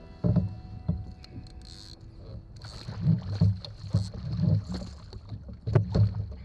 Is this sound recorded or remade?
recorded